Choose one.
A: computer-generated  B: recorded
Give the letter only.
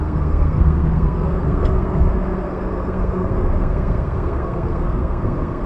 A